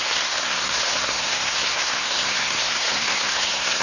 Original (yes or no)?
no